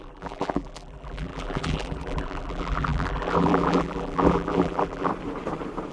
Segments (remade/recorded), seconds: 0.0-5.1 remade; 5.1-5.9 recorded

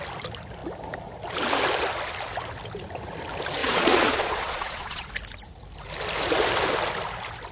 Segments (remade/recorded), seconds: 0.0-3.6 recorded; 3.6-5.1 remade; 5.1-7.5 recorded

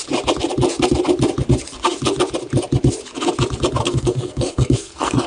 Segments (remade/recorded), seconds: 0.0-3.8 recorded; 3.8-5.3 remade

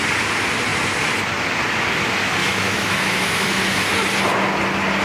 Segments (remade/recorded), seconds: 0.0-2.4 recorded; 2.4-3.6 remade; 3.6-5.0 recorded

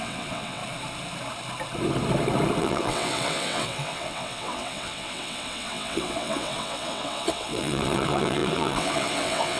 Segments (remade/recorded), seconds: 0.0-0.6 remade; 0.6-2.6 recorded; 2.6-9.6 remade